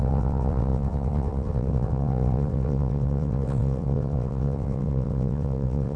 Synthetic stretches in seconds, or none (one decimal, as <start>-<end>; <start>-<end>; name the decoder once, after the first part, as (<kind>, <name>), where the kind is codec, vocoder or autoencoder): 0.0-6.0 (vocoder, WaveNeXt)

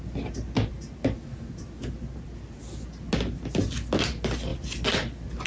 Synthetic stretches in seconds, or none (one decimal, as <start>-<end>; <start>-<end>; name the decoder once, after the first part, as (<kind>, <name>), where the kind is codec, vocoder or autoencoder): none

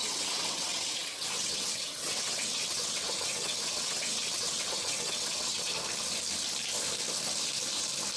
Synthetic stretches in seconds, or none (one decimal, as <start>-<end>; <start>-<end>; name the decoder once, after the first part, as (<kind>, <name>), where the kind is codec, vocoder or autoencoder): 0.0-5.7 (vocoder, WaveNeXt)

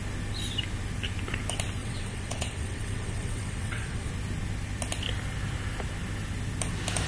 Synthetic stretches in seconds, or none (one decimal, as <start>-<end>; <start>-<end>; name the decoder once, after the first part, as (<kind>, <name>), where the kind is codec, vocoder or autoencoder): 1.8-4.1 (vocoder, WaveNeXt)

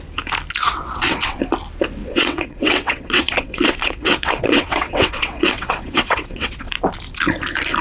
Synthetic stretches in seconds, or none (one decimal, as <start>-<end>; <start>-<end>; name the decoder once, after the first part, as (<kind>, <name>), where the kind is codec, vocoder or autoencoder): 0.6-1.4 (vocoder, WaveNeXt); 2.0-6.7